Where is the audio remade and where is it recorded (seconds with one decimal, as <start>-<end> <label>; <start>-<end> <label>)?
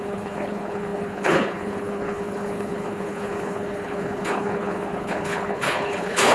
0.0-6.3 remade